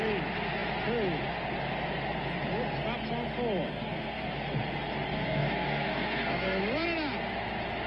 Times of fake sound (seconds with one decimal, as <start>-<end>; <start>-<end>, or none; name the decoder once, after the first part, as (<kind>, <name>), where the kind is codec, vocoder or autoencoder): 3.7-4.3 (codec, SNAC); 5.1-6.6